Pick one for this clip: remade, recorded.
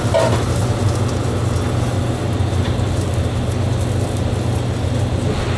recorded